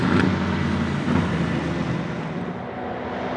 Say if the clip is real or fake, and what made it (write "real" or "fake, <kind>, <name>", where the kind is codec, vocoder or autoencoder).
real